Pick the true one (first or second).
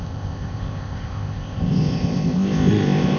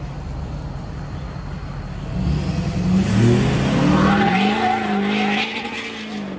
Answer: second